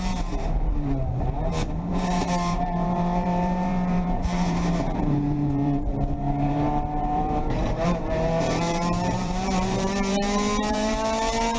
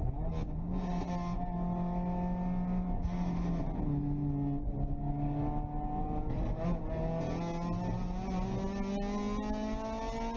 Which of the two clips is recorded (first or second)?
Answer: second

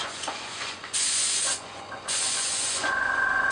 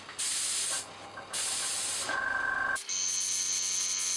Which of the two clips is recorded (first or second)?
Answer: second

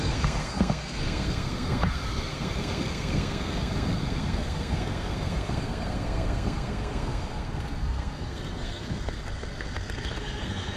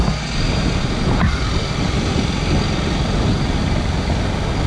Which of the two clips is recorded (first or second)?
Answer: second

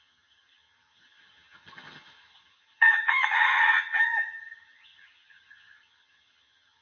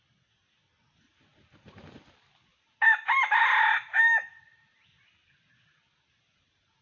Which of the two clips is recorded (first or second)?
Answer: second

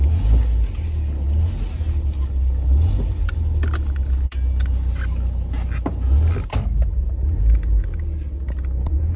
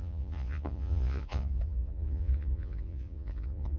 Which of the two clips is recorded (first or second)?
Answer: first